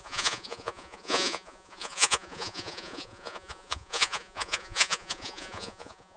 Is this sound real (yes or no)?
no